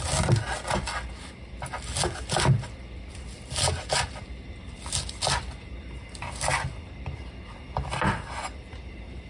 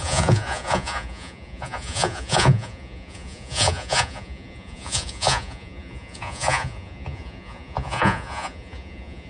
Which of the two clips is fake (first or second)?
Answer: second